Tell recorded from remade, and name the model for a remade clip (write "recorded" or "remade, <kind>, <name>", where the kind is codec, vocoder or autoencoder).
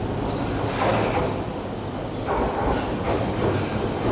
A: recorded